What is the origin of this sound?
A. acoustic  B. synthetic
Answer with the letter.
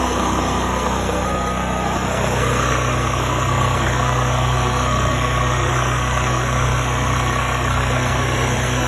B